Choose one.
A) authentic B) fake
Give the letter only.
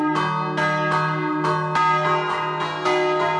A